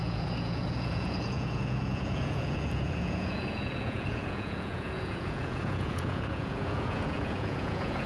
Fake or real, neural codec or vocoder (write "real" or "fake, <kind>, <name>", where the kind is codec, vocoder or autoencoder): fake, vocoder, Vocos